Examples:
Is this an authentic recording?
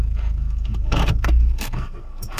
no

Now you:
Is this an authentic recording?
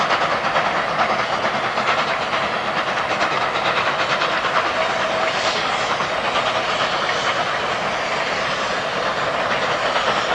yes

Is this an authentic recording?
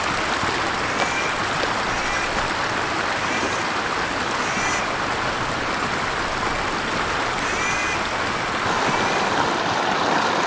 yes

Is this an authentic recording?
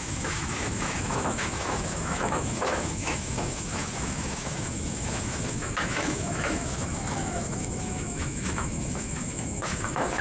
no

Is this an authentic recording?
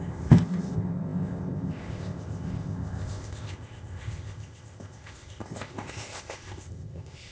no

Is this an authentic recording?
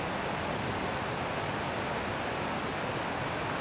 yes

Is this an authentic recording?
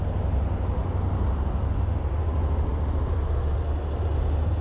yes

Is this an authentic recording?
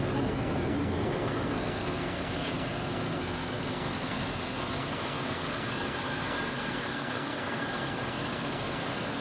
no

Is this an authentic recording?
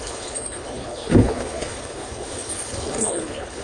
no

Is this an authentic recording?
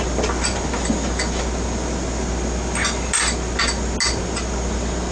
yes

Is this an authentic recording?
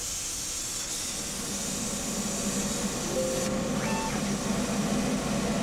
yes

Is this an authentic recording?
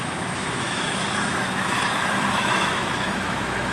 no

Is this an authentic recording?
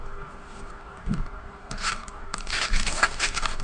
no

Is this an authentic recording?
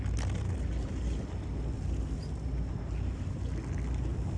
yes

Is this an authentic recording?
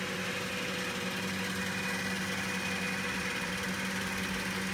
yes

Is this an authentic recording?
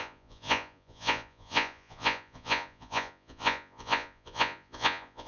no